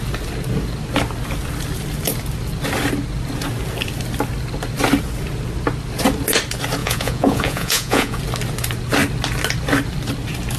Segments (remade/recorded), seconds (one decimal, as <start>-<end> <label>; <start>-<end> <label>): 0.0-6.8 recorded; 6.8-8.2 remade; 8.2-10.6 recorded